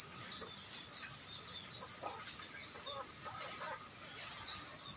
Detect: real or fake real